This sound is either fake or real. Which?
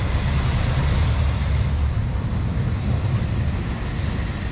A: real